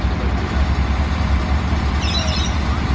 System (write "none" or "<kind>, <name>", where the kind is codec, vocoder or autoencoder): none